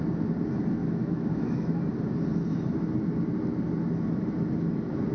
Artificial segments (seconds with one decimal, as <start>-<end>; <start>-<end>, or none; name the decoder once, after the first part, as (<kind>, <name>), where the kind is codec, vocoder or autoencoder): 0.8-1.8 (autoencoder, DAC-VAE)